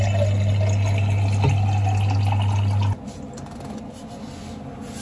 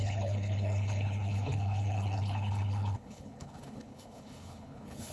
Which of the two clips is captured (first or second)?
first